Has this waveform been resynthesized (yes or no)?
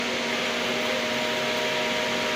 no